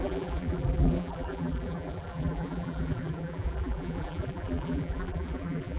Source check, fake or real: fake